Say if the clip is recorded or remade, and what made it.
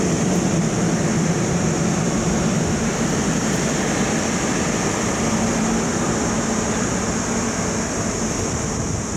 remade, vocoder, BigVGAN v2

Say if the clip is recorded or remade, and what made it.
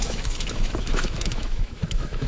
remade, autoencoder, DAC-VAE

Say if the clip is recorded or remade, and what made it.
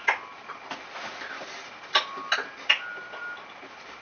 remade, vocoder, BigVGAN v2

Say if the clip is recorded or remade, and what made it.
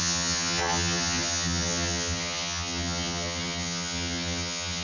remade, vocoder, HiFi-GAN